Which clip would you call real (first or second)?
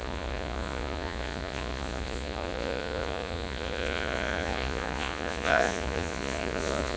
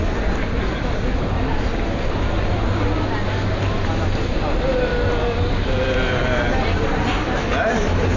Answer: second